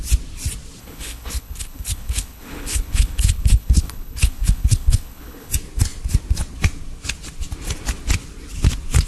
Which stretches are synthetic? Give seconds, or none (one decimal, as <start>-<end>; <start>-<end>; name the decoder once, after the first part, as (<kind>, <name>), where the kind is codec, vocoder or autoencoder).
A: 0.8-5.5 (codec, HILCodec)